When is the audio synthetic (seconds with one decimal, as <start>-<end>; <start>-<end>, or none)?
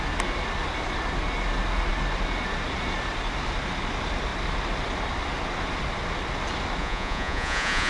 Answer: 6.8-7.9